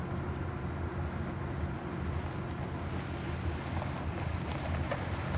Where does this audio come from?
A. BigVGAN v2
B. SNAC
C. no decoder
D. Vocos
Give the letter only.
C